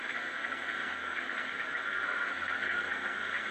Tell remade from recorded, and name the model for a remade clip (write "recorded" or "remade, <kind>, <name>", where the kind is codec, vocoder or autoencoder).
remade, codec, SNAC